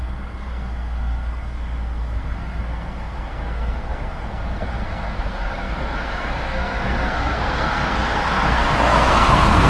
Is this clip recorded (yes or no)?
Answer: no